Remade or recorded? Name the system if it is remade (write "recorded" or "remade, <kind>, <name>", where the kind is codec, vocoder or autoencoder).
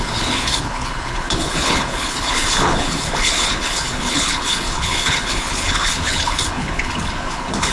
remade, codec, HILCodec